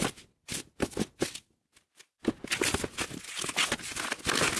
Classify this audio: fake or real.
real